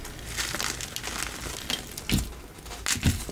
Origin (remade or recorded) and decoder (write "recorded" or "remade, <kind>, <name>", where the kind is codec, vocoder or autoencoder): recorded